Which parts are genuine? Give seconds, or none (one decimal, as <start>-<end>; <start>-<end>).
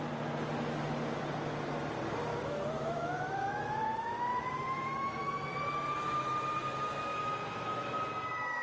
0.0-2.3; 5.5-7.1; 8.0-8.6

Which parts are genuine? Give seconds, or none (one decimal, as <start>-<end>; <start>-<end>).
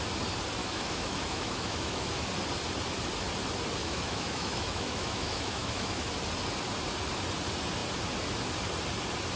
0.0-0.6; 2.3-3.8; 6.1-9.4